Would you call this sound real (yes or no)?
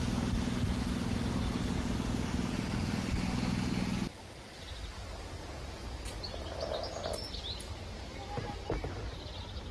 yes